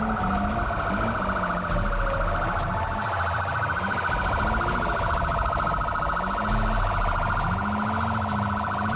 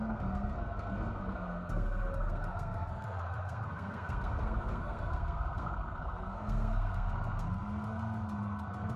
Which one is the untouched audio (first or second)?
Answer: first